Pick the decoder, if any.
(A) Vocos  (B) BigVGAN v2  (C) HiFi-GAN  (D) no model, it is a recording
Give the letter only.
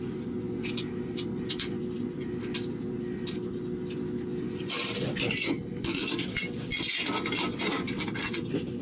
D